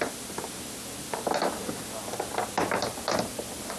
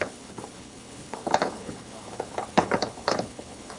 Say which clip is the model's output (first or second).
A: second